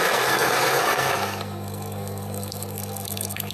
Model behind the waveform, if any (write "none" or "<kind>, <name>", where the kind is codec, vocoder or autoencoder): codec, SNAC